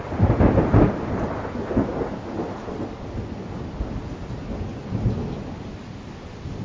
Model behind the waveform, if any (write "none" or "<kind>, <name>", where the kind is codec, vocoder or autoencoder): none